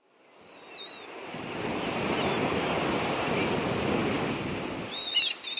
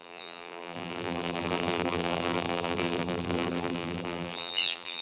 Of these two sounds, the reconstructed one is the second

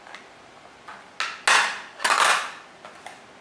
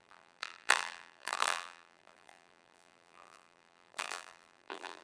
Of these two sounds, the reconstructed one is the second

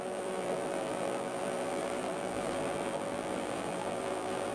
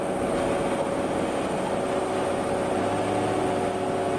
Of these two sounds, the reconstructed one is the first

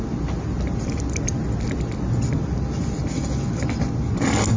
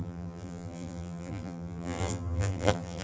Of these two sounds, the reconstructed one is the second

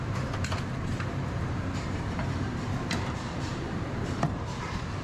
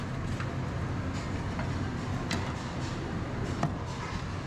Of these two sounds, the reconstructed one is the first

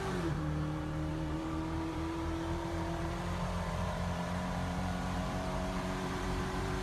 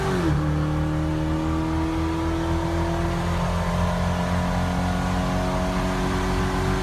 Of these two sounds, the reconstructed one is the first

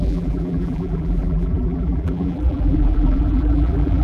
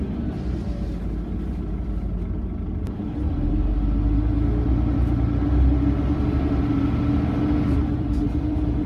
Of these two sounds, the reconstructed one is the first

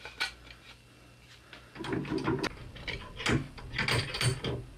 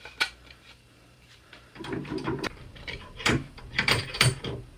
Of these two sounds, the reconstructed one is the second